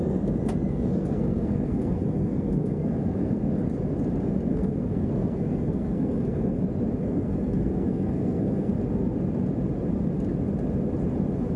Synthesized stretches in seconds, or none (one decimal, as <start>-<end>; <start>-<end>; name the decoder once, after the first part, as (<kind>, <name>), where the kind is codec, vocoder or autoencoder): 0.7-3.4 (codec, SNAC); 4.5-6.6; 7.0-8.7